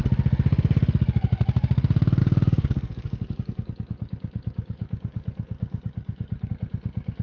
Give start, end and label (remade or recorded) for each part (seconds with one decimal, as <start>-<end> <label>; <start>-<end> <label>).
0.0-2.2 recorded; 2.2-6.5 remade; 6.5-7.2 recorded